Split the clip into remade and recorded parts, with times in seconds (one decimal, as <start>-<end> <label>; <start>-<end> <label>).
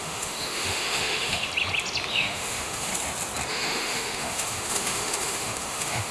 0.0-1.5 remade; 1.5-2.1 recorded; 2.1-2.9 remade; 2.9-3.5 recorded; 3.5-6.1 remade